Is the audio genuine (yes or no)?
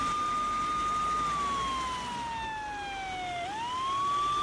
yes